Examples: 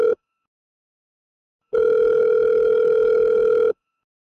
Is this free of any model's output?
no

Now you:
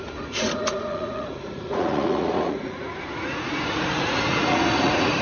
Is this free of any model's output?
no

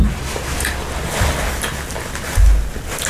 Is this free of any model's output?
yes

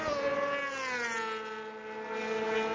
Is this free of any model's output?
yes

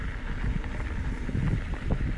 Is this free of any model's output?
yes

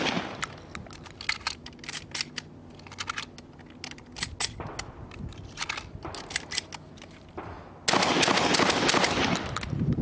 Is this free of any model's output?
yes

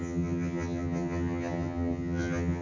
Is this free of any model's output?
no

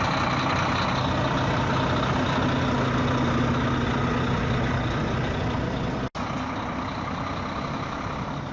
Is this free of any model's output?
yes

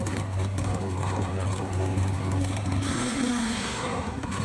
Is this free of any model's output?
no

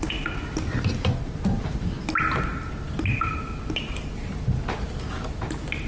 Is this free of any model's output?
yes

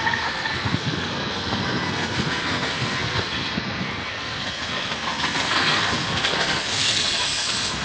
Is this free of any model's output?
no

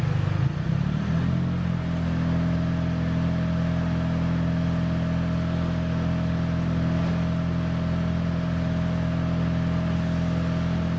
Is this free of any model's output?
yes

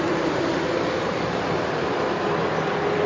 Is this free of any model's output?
yes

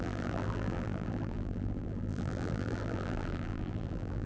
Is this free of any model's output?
no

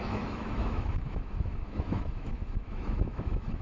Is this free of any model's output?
no